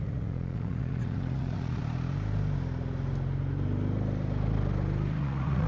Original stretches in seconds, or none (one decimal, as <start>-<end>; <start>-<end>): 1.8-5.2